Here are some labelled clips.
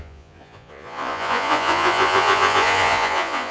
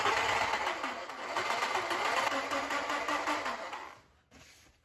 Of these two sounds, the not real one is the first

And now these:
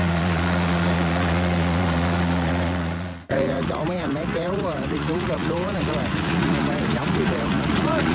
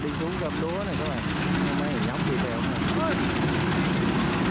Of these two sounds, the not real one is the first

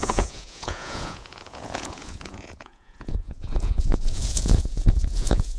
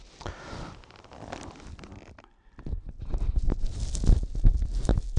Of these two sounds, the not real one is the first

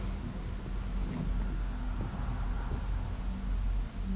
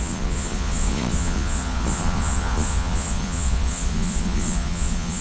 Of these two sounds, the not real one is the second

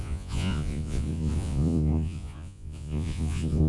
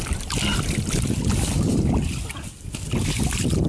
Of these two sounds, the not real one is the first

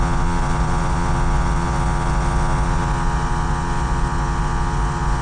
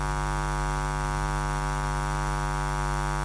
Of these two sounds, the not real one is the first